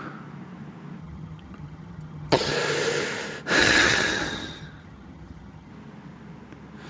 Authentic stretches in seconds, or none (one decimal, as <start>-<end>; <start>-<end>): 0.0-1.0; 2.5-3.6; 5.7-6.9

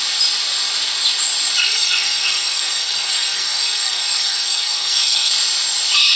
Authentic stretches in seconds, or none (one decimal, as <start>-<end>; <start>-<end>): 0.0-1.6; 5.3-6.2

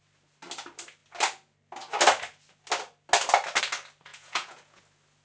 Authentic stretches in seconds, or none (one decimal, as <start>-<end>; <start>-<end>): 0.0-4.1; 4.8-5.2

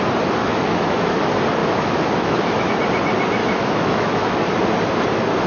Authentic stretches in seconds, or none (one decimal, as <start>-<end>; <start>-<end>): 0.0-0.4; 1.1-1.6; 2.7-3.4; 4.4-5.5

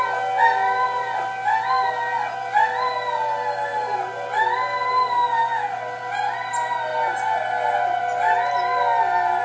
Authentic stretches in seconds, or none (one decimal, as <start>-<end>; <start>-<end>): 0.0-9.4

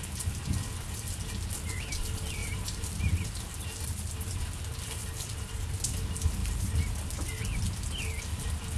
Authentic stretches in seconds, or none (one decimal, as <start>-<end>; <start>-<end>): 0.0-2.4; 3.4-5.0; 5.6-6.4; 6.9-8.8

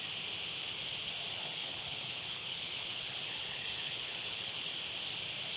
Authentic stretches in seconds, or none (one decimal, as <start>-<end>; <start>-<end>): 0.0-1.3; 4.7-5.6

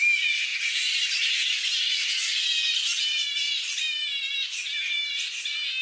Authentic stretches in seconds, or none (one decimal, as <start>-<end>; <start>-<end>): 0.0-5.8